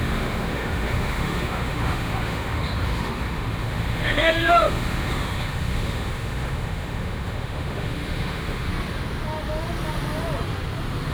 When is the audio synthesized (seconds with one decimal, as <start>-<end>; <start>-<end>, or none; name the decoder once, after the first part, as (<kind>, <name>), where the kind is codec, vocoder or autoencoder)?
0.0-8.7 (autoencoder, DAC-VAE)